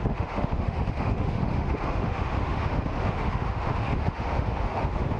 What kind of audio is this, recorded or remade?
remade